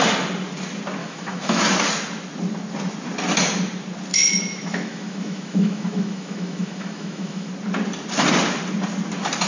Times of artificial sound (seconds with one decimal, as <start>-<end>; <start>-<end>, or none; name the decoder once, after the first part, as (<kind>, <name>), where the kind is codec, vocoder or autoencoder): 1.0-1.6 (autoencoder, DAC-VAE); 4.1-7.5